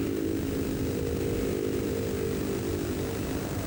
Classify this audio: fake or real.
real